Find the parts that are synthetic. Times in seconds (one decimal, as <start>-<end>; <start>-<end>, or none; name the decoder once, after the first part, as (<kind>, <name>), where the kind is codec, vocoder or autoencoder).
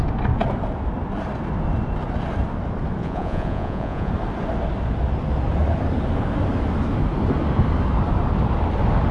3.0-4.1 (vocoder, Vocos)